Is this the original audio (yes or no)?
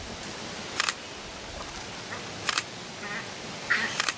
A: yes